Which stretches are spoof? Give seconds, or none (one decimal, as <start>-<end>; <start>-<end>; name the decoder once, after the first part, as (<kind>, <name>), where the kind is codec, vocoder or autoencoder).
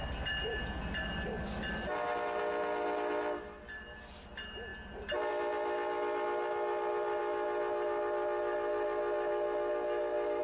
none